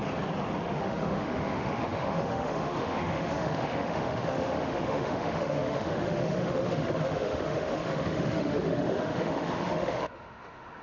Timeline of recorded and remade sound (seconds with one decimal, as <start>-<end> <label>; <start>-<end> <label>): 0.0-0.6 recorded; 0.6-10.8 remade